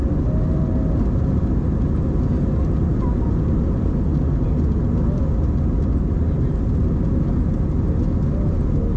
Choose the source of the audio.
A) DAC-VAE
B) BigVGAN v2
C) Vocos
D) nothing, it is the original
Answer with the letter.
D